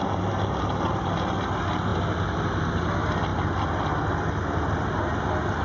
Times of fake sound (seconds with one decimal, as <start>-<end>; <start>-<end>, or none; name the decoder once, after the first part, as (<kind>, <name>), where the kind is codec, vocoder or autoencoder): none